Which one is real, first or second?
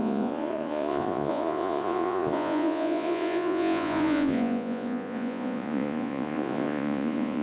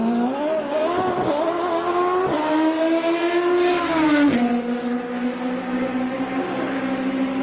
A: second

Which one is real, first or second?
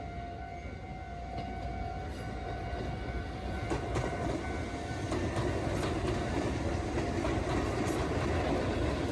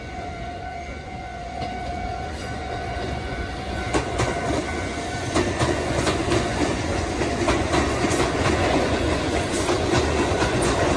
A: first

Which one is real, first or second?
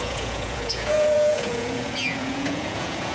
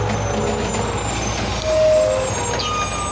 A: second